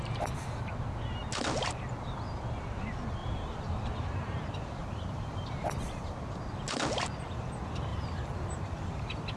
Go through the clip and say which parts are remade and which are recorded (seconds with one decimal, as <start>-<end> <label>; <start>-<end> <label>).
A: 0.0-3.2 recorded; 3.2-3.9 remade; 3.9-4.8 recorded; 4.8-5.5 remade; 5.5-7.9 recorded; 7.9-8.9 remade; 8.9-9.4 recorded